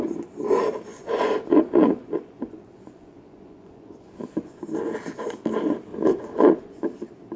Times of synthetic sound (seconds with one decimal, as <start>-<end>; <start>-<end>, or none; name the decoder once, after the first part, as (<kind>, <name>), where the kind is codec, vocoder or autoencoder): 0.9-4.6 (vocoder, Vocos); 5.9-6.8

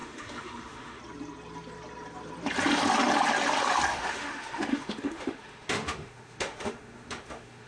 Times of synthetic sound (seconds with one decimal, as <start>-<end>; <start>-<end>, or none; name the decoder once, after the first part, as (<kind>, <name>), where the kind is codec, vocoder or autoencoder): 0.0-1.0 (autoencoder, DAC-VAE); 3.9-7.7

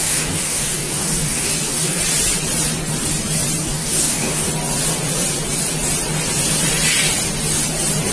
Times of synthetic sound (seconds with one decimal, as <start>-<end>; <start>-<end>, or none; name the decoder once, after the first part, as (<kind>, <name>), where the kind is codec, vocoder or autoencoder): 0.0-2.0 (codec, DAC); 3.6-4.5

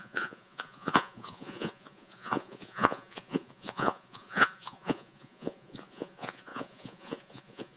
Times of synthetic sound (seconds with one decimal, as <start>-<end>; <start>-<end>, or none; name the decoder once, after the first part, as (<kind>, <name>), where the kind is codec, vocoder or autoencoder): 0.0-7.8 (vocoder, Vocos)

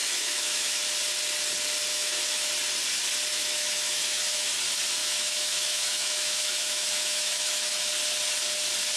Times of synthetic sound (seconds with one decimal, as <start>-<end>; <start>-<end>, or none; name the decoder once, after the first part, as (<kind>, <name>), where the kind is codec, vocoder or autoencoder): 0.0-0.8 (autoencoder, DAC-VAE); 1.9-2.5; 3.3-4.5; 5.0-7.9